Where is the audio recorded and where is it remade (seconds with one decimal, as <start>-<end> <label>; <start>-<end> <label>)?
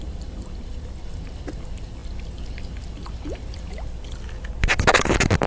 0.0-5.5 recorded